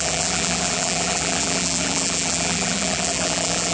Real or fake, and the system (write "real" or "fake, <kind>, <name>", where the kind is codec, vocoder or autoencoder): fake, vocoder, BigVGAN v2